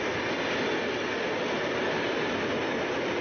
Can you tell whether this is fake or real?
real